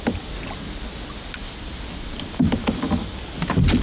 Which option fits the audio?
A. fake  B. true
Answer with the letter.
B